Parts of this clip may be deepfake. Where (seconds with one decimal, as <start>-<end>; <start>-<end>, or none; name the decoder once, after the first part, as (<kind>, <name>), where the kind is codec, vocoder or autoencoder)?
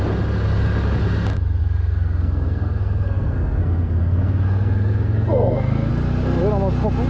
1.6-5.9 (codec, SNAC)